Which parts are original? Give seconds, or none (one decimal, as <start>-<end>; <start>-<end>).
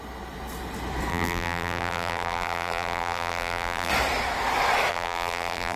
0.0-1.1; 3.9-4.9